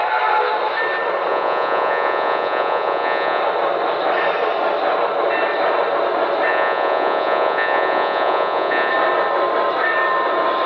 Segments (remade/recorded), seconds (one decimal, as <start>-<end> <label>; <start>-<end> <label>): 0.0-1.3 recorded; 1.3-3.4 remade; 3.4-6.5 recorded; 6.5-8.9 remade; 8.9-10.7 recorded